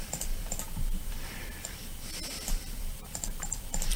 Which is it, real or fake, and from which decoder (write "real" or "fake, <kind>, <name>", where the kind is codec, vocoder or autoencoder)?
fake, vocoder, BigVGAN v2